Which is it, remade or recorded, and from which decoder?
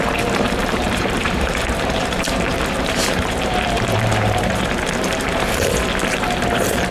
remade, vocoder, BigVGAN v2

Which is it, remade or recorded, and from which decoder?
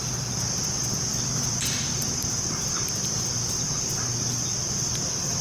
recorded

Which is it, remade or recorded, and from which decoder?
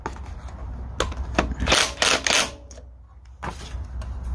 recorded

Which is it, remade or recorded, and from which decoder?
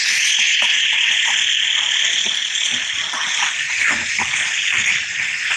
recorded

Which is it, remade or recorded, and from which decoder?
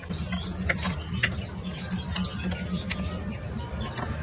recorded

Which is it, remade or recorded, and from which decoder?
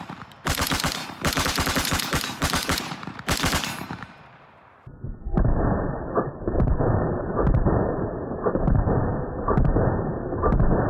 remade, vocoder, BigVGAN v2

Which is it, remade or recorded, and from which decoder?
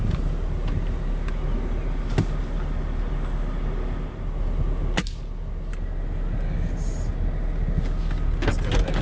recorded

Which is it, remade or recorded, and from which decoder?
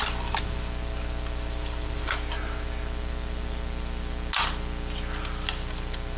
recorded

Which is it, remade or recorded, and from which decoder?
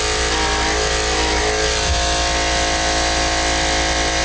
recorded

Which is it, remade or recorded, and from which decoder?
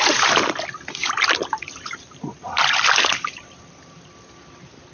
remade, vocoder, BigVGAN v2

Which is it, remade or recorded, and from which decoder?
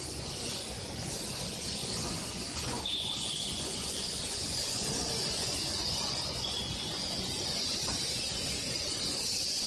remade, vocoder, Vocos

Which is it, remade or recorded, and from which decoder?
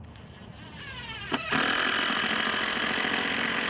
recorded